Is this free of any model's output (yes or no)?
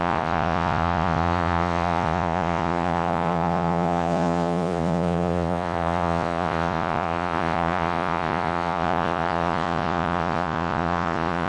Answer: no